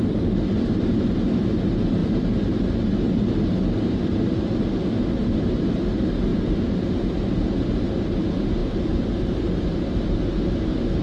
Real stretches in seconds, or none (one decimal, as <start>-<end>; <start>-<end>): 0.0-6.3; 7.3-8.6; 9.6-11.0